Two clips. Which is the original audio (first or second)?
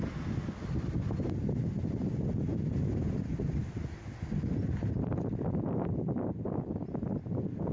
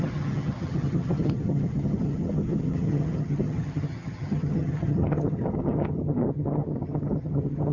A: first